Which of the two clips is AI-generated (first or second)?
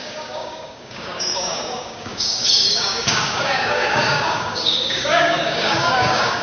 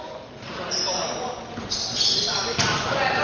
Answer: first